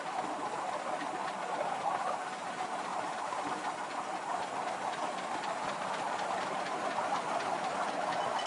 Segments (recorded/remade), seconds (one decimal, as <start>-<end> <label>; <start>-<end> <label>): 0.0-8.5 recorded